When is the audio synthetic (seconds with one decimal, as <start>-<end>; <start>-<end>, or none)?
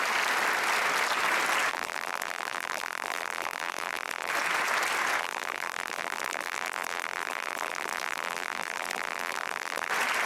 1.7-4.3; 5.2-9.9